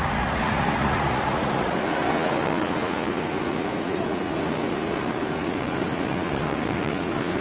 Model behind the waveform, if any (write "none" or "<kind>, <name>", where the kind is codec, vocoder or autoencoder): vocoder, Vocos